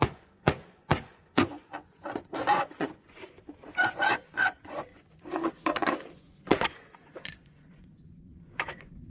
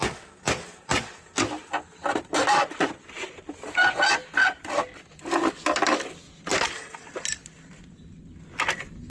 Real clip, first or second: second